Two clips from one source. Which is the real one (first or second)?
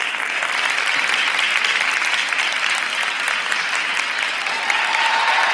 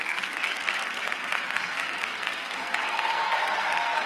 first